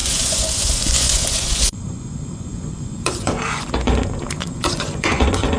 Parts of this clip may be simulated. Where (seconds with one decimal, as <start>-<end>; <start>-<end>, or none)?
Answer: 0.0-5.6